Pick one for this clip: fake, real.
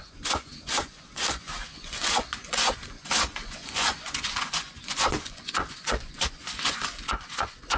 fake